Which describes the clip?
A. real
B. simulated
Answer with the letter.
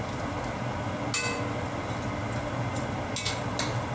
A